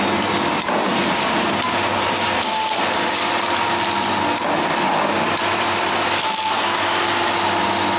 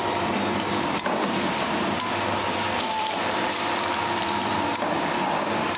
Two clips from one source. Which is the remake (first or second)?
second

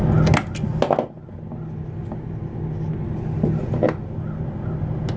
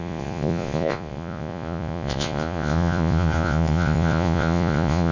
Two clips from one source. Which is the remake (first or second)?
second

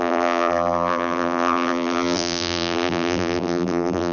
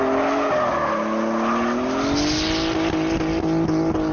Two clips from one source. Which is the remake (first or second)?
first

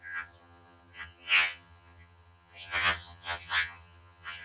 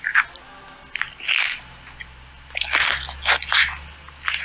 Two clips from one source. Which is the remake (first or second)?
first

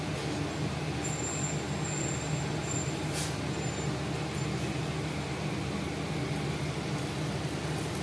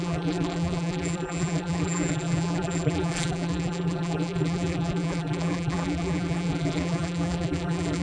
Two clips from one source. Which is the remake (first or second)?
second